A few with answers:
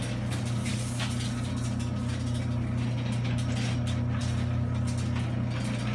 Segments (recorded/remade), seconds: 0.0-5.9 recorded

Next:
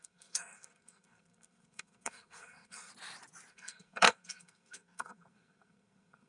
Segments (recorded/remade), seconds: 0.0-2.9 remade; 2.9-3.5 recorded; 3.5-6.3 remade